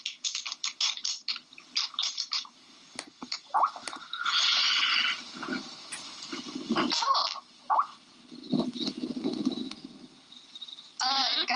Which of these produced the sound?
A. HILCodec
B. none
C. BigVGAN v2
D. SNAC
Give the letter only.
B